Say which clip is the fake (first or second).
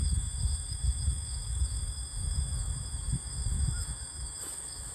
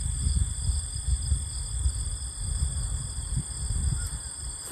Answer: first